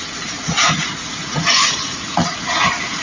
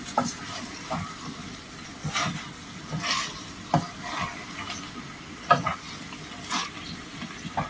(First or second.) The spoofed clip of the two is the first